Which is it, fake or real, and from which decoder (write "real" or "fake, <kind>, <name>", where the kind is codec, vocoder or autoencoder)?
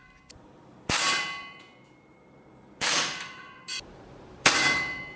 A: fake, vocoder, BigVGAN v2